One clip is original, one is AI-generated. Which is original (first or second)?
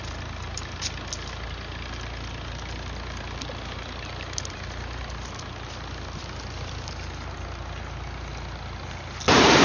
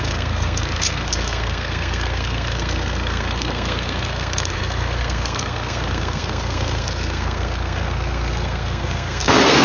first